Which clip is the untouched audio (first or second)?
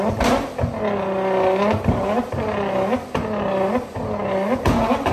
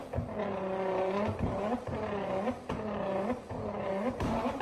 first